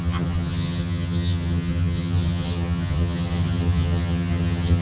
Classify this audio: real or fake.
fake